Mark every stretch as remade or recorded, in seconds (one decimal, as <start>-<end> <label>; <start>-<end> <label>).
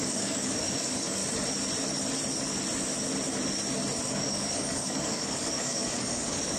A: 0.0-1.2 remade; 1.2-4.1 recorded; 4.1-6.6 remade